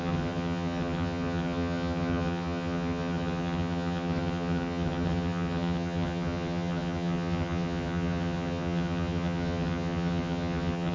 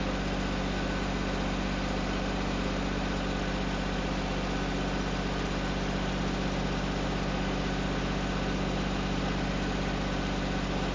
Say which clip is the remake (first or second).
first